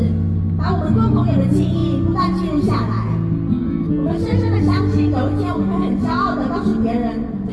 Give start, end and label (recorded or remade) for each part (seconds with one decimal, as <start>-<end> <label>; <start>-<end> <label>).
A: 0.0-7.5 recorded